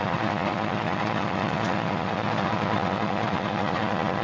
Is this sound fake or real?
fake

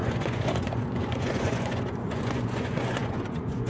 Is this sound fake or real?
fake